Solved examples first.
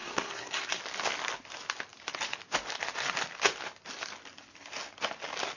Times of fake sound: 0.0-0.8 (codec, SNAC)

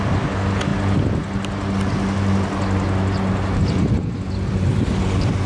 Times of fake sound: none

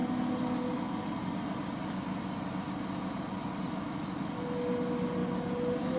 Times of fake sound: none

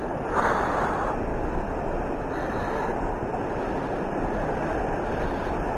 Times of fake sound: none